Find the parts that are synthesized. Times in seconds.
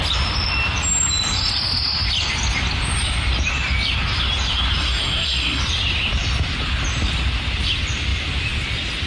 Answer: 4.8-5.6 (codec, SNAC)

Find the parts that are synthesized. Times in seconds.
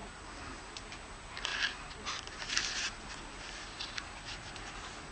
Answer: none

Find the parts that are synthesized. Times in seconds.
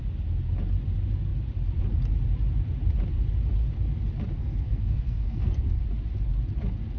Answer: 4.4-5.8 (codec, SNAC)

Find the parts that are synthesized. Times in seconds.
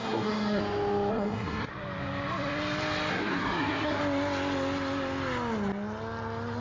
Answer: 0.0-0.6 (codec, SNAC); 1.1-1.7; 3.1-4.0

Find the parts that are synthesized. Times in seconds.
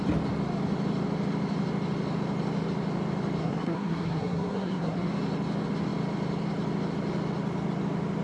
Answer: 3.4-5.1 (codec, SNAC)